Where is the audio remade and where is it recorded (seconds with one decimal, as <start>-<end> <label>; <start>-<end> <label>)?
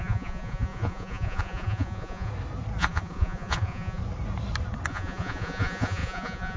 0.0-2.3 remade; 2.3-2.8 recorded; 2.8-4.0 remade; 4.0-4.9 recorded; 4.9-6.6 remade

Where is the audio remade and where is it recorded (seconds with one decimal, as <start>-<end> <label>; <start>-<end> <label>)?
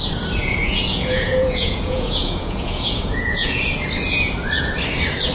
0.0-0.4 recorded; 0.4-3.6 remade; 3.6-5.3 recorded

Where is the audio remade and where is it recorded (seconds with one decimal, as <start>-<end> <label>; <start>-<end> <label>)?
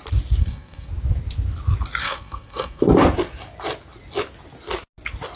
0.0-0.4 recorded; 0.4-0.9 remade; 0.9-2.0 recorded; 2.0-2.8 remade; 2.8-5.4 recorded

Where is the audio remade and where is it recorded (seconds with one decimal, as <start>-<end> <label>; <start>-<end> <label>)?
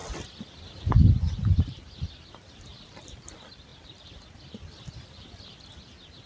0.0-0.9 remade; 0.9-3.7 recorded; 3.7-5.3 remade; 5.3-6.3 recorded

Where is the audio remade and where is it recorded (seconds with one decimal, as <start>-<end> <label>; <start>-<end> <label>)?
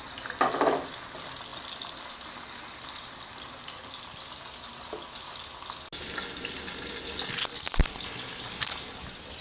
0.0-9.4 recorded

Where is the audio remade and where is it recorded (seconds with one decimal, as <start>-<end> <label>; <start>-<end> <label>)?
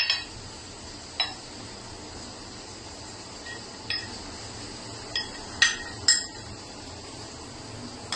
0.0-0.6 recorded; 0.6-1.1 remade; 1.1-2.3 recorded; 2.3-3.8 remade; 3.8-6.3 recorded; 6.3-7.5 remade; 7.5-8.2 recorded